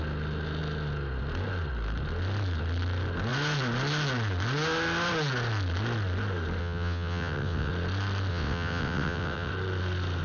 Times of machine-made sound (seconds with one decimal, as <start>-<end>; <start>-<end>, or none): 6.6-7.7; 8.3-9.5